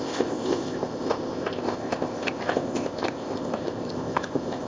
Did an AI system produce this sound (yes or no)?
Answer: yes